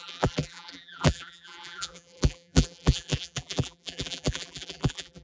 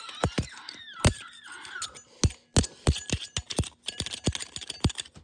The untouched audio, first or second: second